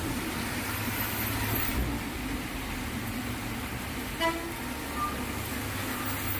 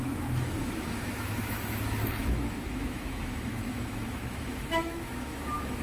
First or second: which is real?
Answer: first